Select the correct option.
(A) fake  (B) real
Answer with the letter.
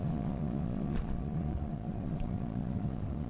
A